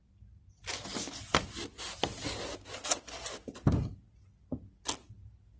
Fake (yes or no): no